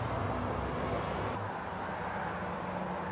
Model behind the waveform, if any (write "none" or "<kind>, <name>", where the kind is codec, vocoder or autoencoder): none